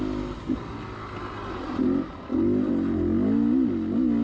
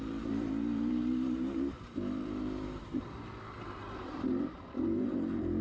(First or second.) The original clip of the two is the first